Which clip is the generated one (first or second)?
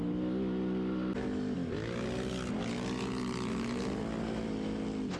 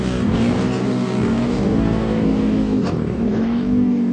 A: second